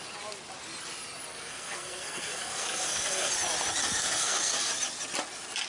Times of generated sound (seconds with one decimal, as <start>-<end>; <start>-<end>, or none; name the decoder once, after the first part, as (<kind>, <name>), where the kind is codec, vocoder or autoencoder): 1.3-3.3 (codec, SNAC); 3.8-4.7